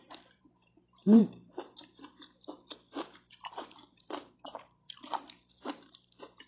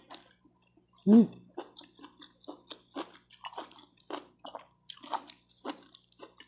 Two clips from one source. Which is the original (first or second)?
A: second